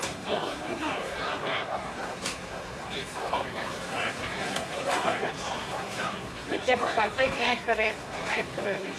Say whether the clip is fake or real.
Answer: fake